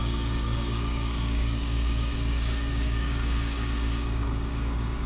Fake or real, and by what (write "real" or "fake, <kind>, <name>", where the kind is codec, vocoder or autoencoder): fake, codec, DAC